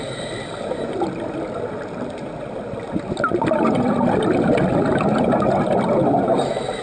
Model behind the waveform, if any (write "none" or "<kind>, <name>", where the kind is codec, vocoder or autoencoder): none